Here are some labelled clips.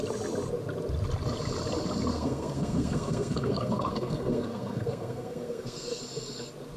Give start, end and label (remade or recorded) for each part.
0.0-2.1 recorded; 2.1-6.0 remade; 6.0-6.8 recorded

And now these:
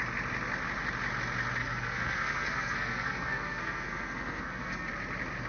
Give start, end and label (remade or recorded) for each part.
0.0-1.6 recorded; 1.6-4.9 remade; 4.9-5.5 recorded